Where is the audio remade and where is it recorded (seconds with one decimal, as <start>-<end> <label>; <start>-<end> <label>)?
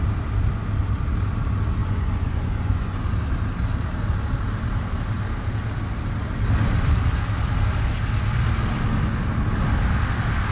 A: 0.0-1.8 recorded; 1.8-3.1 remade; 3.1-10.5 recorded